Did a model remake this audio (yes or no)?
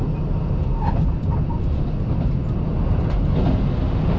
no